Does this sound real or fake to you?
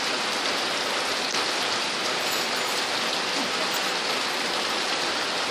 real